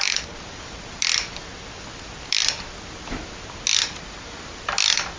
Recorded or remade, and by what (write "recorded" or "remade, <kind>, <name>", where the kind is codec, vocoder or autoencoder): recorded